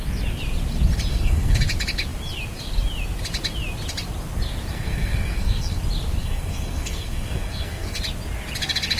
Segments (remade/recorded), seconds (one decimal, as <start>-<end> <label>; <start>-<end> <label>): 0.0-1.1 recorded; 1.1-1.6 remade; 1.6-4.7 recorded; 4.7-5.8 remade; 5.8-6.2 recorded; 6.2-8.0 remade; 8.0-9.0 recorded